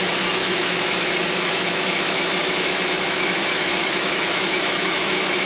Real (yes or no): no